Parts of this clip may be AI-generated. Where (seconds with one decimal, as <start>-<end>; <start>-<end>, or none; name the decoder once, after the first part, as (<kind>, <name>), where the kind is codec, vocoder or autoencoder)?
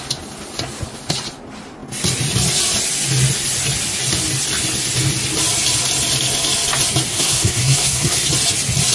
7.1-8.3 (codec, SNAC)